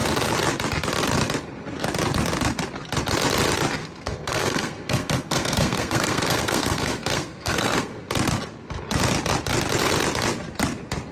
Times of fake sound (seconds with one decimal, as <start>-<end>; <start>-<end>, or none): 3.8-8.0